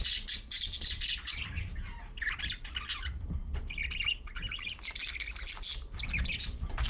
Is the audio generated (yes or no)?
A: no